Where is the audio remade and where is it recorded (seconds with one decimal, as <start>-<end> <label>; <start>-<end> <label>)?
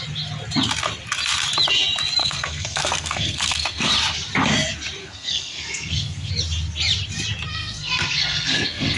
0.0-2.2 recorded; 2.2-3.9 remade; 3.9-5.0 recorded; 5.0-6.3 remade; 6.3-7.5 recorded; 7.5-9.0 remade